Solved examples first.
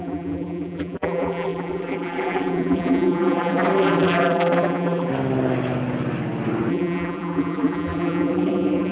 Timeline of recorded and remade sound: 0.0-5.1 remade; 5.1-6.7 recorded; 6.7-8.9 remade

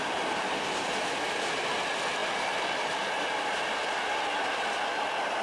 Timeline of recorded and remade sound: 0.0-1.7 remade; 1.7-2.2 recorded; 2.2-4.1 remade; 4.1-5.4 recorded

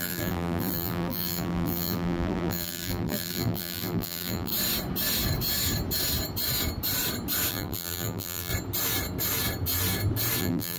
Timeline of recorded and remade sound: 0.0-4.5 remade; 4.5-7.5 recorded; 7.5-8.5 remade; 8.5-10.4 recorded; 10.4-10.8 remade

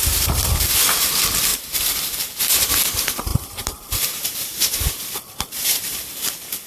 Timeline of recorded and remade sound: 0.0-1.5 recorded; 1.5-2.4 remade; 2.4-3.3 recorded; 3.3-6.7 remade